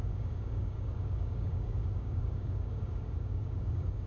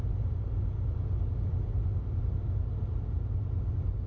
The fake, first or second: first